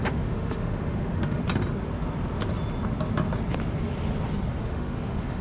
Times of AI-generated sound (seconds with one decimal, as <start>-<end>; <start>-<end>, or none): 0.0-1.4; 4.6-5.4